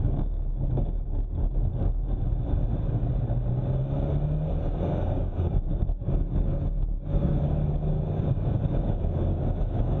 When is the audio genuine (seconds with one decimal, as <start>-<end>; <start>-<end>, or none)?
1.7-4.5